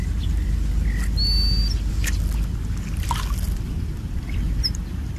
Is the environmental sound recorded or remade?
recorded